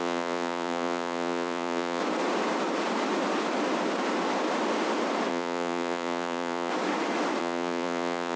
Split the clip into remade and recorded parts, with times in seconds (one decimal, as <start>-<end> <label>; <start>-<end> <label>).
0.0-2.0 remade; 2.0-5.3 recorded; 5.3-6.7 remade; 6.7-7.4 recorded; 7.4-8.4 remade

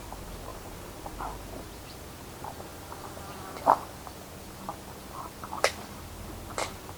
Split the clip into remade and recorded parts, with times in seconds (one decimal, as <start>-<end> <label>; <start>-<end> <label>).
0.0-0.5 recorded; 0.5-1.7 remade; 1.7-7.0 recorded

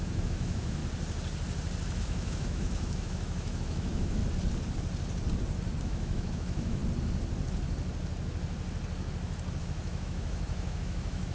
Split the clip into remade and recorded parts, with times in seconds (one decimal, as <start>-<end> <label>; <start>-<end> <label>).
0.0-0.8 remade; 0.8-2.0 recorded; 2.0-4.2 remade; 4.2-5.8 recorded; 5.8-6.8 remade; 6.8-9.6 recorded; 9.6-11.3 remade

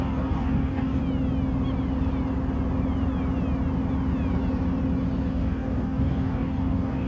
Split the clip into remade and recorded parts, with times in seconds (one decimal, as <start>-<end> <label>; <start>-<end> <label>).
0.0-1.0 remade; 1.0-5.3 recorded; 5.3-7.1 remade

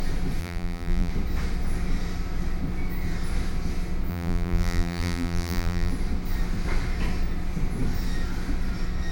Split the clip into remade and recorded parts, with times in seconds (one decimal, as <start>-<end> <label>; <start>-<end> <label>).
0.0-0.4 recorded; 0.4-1.1 remade; 1.1-4.1 recorded; 4.1-5.9 remade; 5.9-9.1 recorded